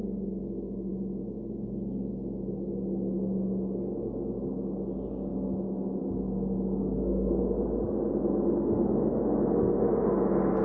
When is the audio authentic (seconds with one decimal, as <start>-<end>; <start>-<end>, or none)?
0.0-6.8; 7.4-10.6